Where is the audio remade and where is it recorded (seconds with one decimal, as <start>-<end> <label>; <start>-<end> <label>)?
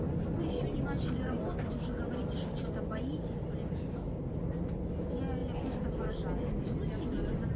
0.0-7.6 recorded